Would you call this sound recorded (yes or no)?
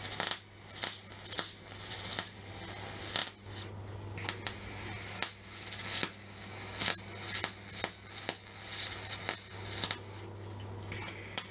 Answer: yes